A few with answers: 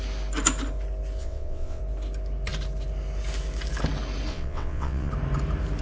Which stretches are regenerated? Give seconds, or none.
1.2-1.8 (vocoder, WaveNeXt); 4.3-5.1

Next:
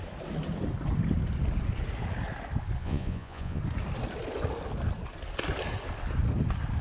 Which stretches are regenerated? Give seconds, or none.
2.8-3.6 (vocoder, Vocos)

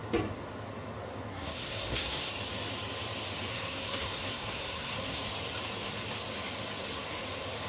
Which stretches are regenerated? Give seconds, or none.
1.3-2.3 (codec, SNAC); 3.5-5.2